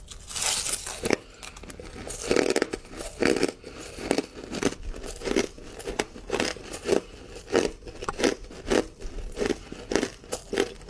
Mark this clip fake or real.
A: real